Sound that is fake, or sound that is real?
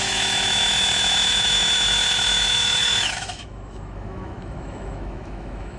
fake